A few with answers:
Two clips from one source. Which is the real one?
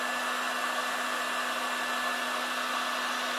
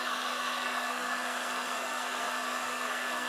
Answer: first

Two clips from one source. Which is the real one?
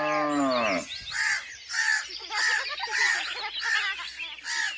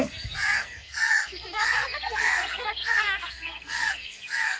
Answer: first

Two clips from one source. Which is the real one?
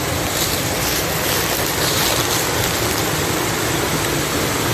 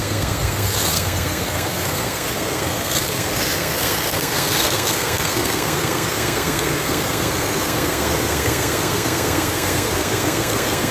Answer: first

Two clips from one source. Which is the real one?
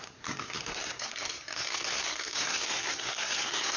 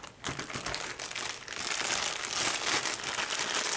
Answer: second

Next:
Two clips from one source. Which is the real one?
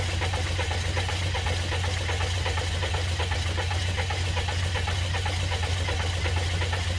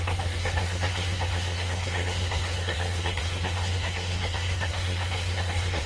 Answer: first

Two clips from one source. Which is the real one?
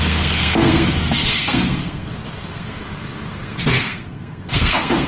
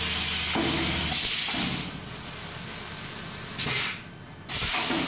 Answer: second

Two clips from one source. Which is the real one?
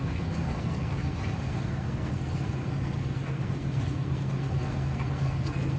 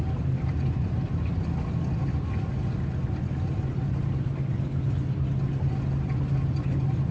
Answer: second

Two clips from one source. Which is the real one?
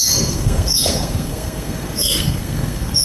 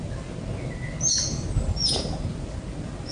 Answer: second